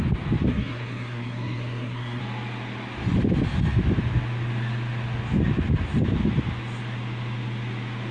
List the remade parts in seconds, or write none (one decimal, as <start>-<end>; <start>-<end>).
0.5-2.2